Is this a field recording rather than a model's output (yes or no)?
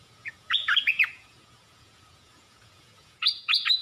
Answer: no